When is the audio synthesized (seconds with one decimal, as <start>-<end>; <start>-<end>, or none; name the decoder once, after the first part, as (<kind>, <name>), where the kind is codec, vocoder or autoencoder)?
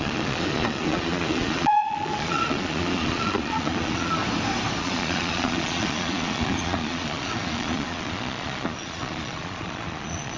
0.0-4.2 (vocoder, Vocos); 4.8-10.4